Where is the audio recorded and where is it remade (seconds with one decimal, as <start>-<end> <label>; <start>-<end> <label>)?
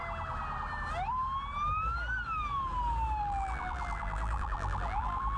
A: 0.0-3.2 recorded; 3.2-5.4 remade